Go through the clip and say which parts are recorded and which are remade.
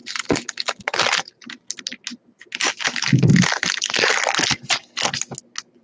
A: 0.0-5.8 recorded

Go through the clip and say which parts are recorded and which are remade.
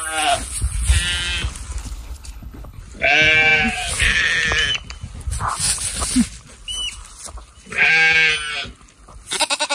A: 0.0-1.8 recorded; 1.8-2.8 remade; 2.8-9.7 recorded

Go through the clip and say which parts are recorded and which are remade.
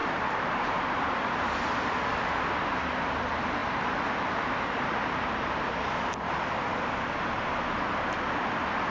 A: 0.0-1.5 remade; 1.5-2.1 recorded; 2.1-2.6 remade; 2.6-8.9 recorded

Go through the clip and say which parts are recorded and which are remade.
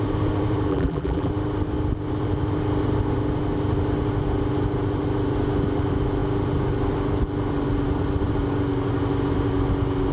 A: 0.0-0.7 recorded; 0.7-1.3 remade; 1.3-10.1 recorded